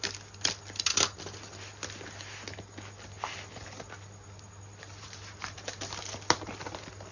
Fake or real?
real